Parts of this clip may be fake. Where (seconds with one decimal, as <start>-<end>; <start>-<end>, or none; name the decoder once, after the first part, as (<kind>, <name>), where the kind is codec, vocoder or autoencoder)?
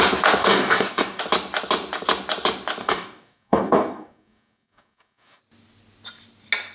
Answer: 0.4-1.2 (codec, DAC); 2.8-5.4